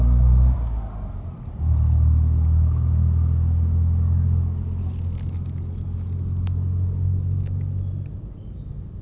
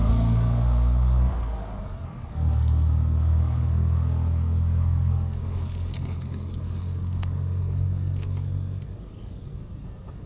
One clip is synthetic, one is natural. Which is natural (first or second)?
first